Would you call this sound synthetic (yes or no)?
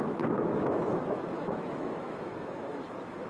yes